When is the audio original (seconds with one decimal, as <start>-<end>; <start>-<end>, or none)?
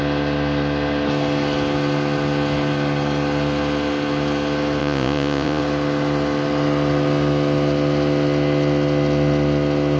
0.0-4.8; 5.6-10.0